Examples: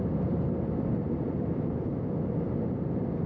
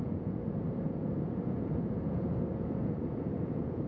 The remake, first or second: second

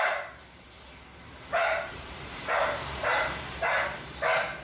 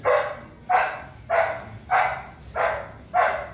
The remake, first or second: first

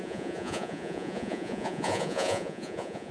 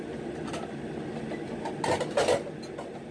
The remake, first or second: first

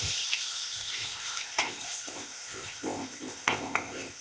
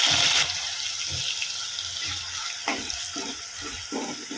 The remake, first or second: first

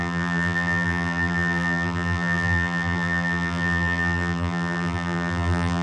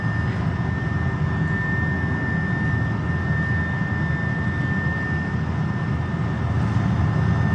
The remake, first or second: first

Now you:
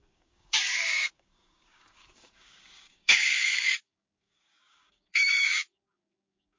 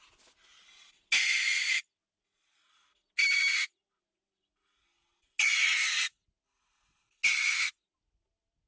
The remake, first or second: first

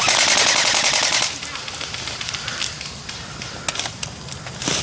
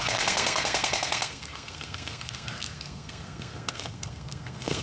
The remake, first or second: second